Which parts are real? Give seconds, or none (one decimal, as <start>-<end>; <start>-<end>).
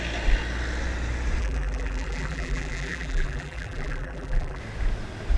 0.0-1.4; 4.6-5.4